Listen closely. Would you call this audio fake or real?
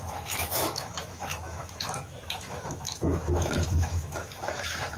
fake